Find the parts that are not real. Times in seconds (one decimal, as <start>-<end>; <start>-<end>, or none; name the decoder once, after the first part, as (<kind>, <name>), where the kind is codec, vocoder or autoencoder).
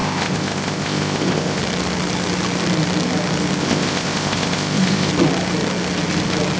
0.0-1.6 (codec, ZipCodec); 3.6-5.1